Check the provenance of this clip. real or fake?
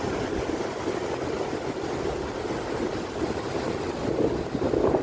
real